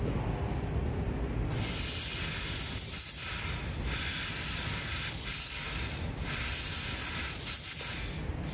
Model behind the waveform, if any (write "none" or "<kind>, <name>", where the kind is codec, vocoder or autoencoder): none